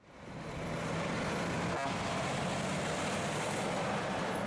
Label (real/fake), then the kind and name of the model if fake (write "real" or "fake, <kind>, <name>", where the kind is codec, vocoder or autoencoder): real